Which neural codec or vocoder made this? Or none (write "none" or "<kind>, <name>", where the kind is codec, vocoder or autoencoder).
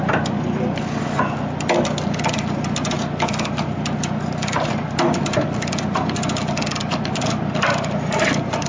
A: none